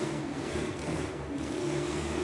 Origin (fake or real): fake